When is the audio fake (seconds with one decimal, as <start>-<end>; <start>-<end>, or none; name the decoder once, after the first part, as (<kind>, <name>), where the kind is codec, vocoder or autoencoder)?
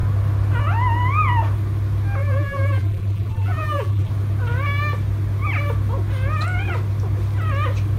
2.2-4.1 (vocoder, BigVGAN v2)